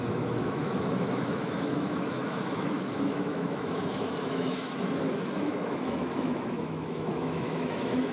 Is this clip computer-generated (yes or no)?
yes